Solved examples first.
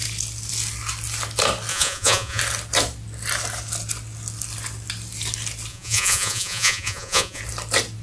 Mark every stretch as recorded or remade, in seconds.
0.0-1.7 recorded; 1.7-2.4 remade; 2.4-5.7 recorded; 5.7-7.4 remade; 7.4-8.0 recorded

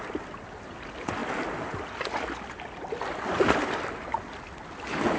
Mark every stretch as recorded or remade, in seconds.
0.0-5.2 recorded